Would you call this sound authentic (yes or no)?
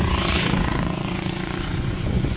no